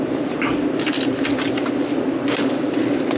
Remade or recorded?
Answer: recorded